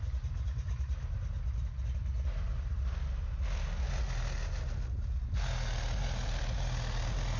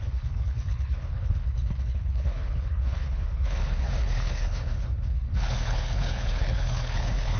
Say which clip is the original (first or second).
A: first